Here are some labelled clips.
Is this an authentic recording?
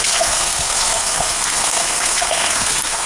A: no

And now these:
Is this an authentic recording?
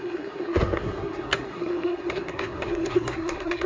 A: no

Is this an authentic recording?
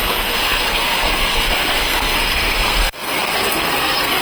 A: no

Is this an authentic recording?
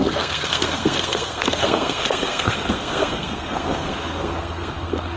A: no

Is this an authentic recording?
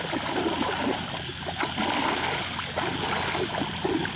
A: yes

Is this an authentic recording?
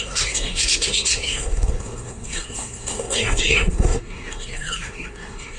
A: no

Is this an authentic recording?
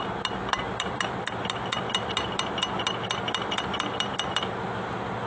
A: yes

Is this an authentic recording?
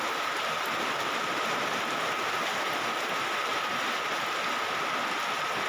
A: yes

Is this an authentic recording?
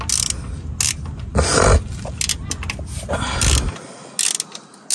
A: yes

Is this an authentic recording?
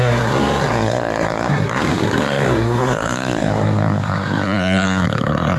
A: no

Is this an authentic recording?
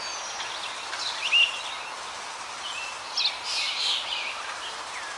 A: yes